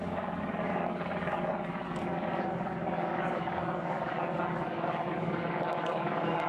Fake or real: fake